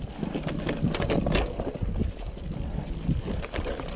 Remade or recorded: recorded